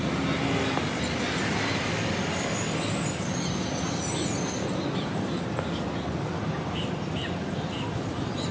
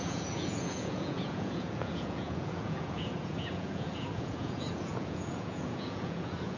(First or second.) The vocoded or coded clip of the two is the second